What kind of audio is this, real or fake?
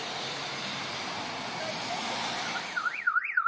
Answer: fake